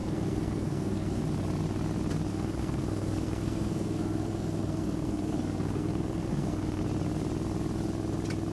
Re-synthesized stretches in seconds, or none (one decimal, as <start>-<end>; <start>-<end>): 0.0-1.2; 2.3-6.8